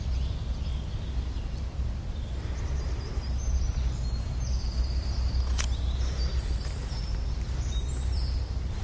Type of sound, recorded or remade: recorded